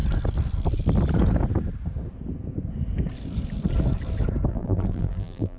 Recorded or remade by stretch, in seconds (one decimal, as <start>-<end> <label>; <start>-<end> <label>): 0.0-4.5 recorded; 4.5-5.6 remade